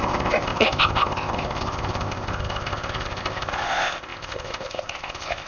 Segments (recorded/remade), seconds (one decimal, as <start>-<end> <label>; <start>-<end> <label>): 0.0-5.5 remade